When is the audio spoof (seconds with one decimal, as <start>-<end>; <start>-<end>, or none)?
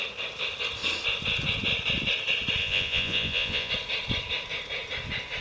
2.6-3.7